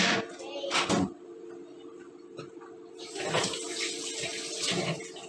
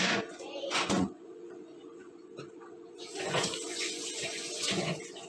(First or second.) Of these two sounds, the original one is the first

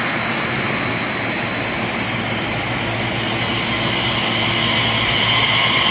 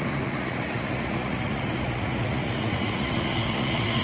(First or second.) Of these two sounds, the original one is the first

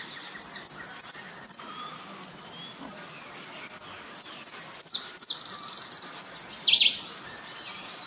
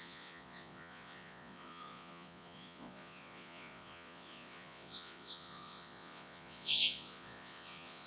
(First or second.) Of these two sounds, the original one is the first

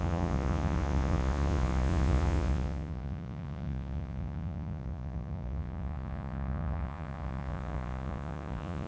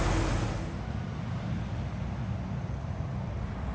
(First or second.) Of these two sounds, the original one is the second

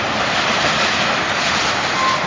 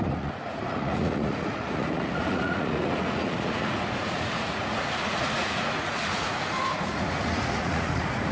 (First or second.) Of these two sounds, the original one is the first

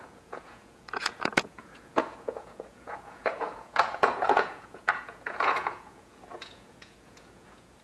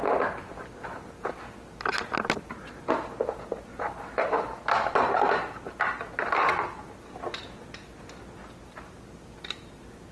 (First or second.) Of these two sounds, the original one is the second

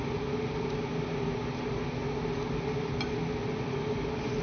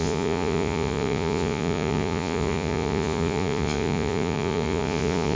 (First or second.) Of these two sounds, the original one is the first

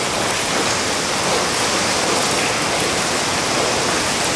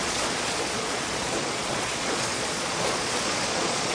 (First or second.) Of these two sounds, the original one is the first